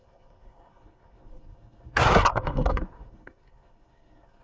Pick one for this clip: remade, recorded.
remade